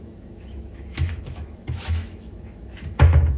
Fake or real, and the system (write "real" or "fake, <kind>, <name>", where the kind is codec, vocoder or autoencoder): fake, autoencoder, DAC-VAE